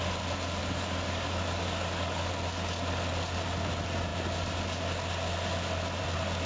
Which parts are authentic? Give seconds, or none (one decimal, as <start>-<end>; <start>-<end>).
0.0-0.6; 2.3-6.5